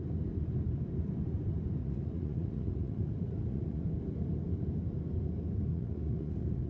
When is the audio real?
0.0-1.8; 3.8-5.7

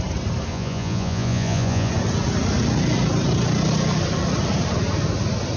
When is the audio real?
0.0-0.5; 1.9-5.6

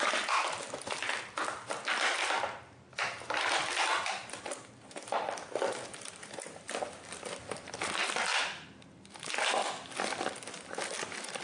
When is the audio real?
0.0-11.4

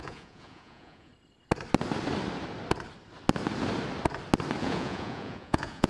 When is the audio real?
1.1-4.6